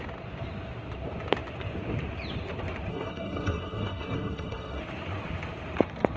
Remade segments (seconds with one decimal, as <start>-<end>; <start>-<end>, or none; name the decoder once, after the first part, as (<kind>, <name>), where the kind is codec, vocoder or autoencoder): 2.9-4.8 (codec, SNAC)